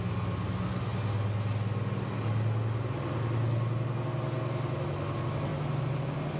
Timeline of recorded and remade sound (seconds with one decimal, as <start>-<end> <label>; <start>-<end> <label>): 0.0-6.4 recorded

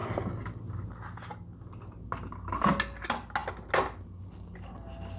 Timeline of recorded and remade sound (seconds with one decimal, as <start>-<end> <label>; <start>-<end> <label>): 0.0-5.2 recorded

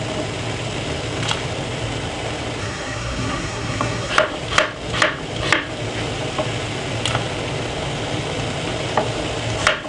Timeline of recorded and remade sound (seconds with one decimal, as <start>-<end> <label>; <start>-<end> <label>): 0.0-2.6 recorded; 2.6-4.1 remade; 4.1-9.9 recorded

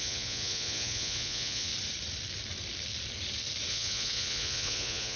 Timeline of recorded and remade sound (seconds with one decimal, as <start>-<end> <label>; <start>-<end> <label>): 0.0-1.7 remade; 1.7-3.7 recorded; 3.7-5.2 remade

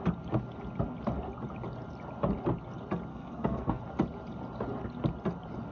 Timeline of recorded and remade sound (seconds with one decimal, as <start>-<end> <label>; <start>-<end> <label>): 0.0-3.1 recorded; 3.1-3.8 remade; 3.8-5.7 recorded

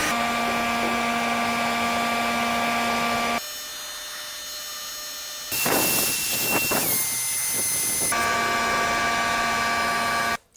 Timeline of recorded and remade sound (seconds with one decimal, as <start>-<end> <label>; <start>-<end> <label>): 0.0-10.6 recorded

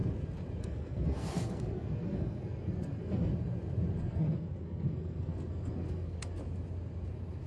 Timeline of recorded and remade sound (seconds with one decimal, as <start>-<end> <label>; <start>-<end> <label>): 0.0-0.6 recorded; 0.6-3.3 remade; 3.3-4.0 recorded; 4.0-6.4 remade; 6.4-7.5 recorded